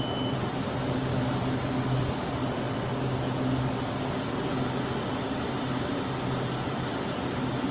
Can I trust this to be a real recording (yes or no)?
yes